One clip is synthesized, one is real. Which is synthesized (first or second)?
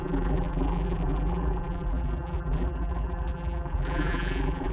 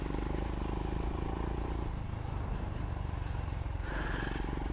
first